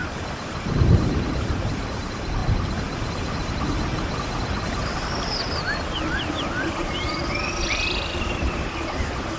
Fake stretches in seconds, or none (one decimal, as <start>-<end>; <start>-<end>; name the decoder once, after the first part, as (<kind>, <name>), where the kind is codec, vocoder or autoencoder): 0.0-9.4 (vocoder, BigVGAN v2)